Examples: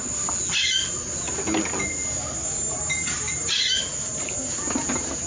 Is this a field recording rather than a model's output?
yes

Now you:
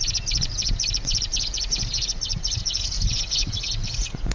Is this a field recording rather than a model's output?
no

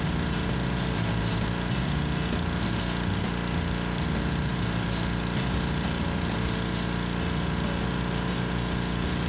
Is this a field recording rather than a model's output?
yes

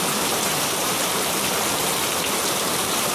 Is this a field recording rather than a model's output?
no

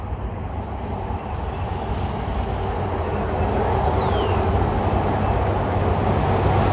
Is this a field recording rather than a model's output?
yes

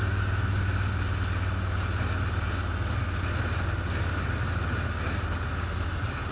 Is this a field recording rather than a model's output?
yes